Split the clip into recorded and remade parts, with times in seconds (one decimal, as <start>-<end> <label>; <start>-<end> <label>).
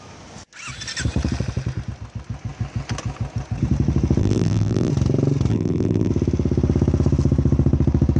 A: 0.0-4.2 recorded; 4.2-4.9 remade; 4.9-5.5 recorded; 5.5-6.1 remade; 6.1-8.2 recorded